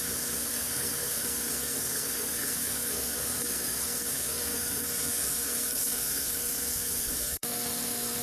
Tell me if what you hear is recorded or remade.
remade